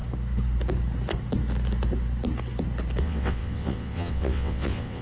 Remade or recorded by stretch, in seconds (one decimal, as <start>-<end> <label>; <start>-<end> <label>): 0.0-3.0 recorded; 3.0-5.0 remade